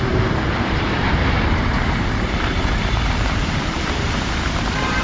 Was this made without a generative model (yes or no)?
no